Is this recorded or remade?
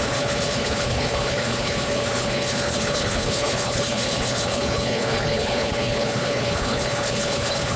remade